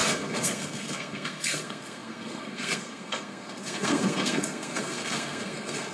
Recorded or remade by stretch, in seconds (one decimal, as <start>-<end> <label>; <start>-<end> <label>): 0.0-5.9 remade

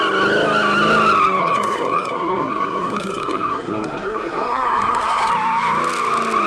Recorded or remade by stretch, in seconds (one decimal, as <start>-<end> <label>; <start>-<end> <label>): 0.0-1.4 recorded; 1.4-5.3 remade; 5.3-6.5 recorded

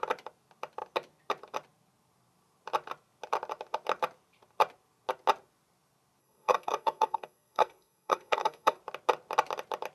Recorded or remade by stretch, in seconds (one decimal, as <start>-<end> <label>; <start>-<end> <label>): 0.0-6.2 recorded; 6.2-8.8 remade; 8.8-9.9 recorded

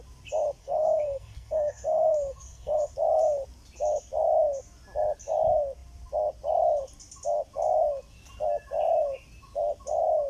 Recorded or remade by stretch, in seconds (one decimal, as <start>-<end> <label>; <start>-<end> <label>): 0.0-0.6 recorded; 0.6-2.9 remade; 2.9-10.3 recorded

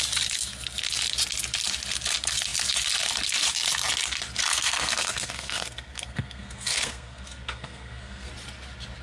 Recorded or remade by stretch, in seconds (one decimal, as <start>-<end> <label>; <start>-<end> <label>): 0.0-4.5 recorded; 4.5-8.3 remade; 8.3-9.0 recorded

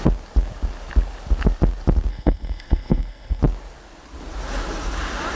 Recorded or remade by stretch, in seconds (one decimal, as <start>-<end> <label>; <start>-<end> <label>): 0.0-2.1 recorded; 2.1-3.4 remade; 3.4-5.4 recorded